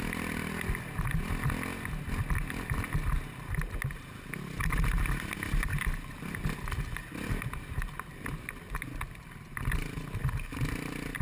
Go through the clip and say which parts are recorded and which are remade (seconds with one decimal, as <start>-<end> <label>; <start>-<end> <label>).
0.0-11.2 recorded